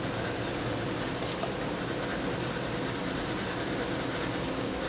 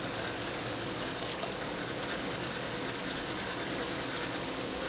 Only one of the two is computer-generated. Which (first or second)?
second